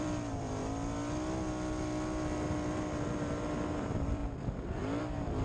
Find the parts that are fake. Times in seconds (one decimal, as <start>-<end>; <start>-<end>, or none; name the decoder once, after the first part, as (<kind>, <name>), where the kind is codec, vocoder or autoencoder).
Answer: 0.0-0.6 (vocoder, BigVGAN v2); 3.8-4.2; 5.0-5.4